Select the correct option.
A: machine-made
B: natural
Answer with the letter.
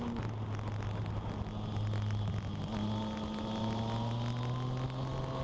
B